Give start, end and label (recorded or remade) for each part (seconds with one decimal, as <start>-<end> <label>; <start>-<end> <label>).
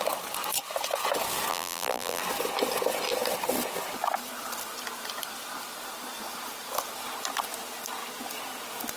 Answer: 0.0-1.5 recorded; 1.5-2.2 remade; 2.2-9.0 recorded